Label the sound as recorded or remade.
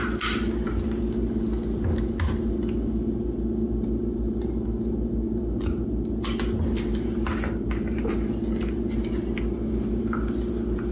recorded